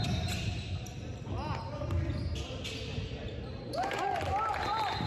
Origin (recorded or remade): recorded